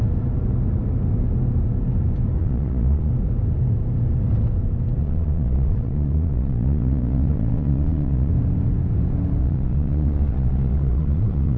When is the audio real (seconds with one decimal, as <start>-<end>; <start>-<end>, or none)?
0.0-2.4; 3.1-5.0; 8.3-9.4

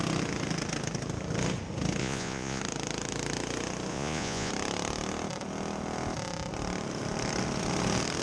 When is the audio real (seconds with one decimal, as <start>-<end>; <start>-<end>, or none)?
0.0-2.0; 2.6-3.9; 4.5-8.2

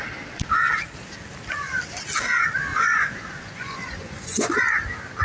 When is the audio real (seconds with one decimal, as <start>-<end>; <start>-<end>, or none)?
0.0-2.7; 4.6-5.2

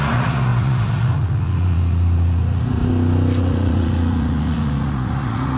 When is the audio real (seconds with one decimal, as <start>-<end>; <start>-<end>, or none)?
2.8-3.4

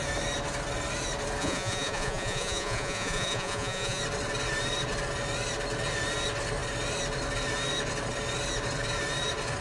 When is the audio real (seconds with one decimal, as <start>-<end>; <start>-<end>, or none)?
0.0-1.4; 4.0-9.6

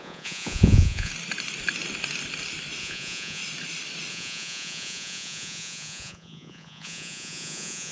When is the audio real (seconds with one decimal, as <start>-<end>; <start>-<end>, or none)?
1.1-2.8; 3.4-4.1

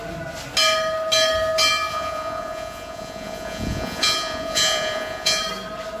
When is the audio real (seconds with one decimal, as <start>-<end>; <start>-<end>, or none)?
0.0-1.9; 5.4-6.0